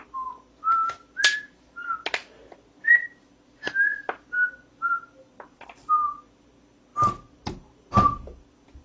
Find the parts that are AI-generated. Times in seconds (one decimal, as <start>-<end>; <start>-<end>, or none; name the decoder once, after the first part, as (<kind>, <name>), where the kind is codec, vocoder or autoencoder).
none